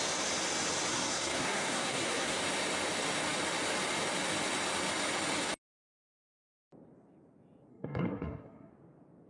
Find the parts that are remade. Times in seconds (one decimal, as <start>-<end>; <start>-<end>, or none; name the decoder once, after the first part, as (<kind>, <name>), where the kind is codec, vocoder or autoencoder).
0.9-2.4 (codec, SNAC); 7.7-8.7